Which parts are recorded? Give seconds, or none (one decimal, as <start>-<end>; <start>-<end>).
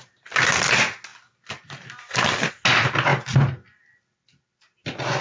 0.0-5.2